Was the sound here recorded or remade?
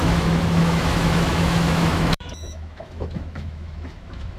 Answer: remade